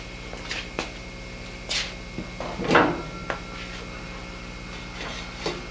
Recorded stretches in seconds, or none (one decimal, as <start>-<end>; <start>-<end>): 0.0-5.7